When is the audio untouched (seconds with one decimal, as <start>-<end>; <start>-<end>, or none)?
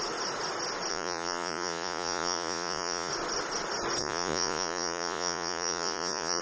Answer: 0.0-0.9; 3.1-4.0